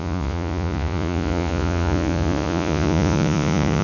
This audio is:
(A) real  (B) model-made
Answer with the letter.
B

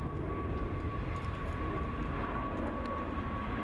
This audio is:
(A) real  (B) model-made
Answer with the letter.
A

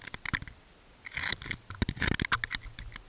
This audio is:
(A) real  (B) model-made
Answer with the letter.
A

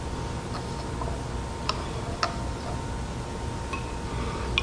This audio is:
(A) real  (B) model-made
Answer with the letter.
A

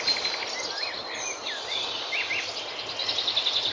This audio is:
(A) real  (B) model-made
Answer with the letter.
A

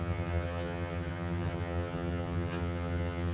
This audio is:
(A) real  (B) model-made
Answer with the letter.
B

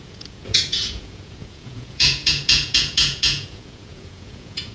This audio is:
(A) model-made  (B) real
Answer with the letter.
A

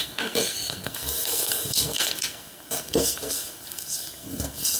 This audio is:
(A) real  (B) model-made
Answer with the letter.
B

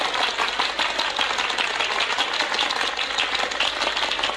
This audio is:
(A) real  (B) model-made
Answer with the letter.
A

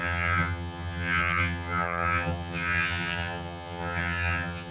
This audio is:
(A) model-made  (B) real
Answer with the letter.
A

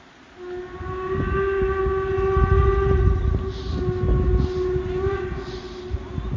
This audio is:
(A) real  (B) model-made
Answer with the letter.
A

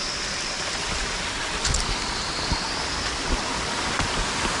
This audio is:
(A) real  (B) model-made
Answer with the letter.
A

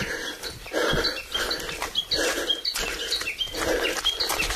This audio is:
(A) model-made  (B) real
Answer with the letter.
B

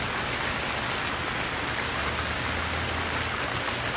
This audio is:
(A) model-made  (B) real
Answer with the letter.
B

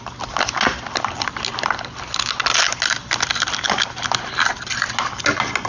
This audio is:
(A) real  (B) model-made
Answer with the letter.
A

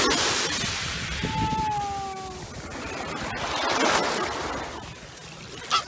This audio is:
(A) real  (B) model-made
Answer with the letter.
A